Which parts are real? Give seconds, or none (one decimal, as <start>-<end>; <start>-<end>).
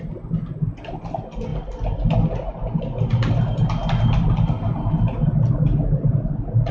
0.0-6.7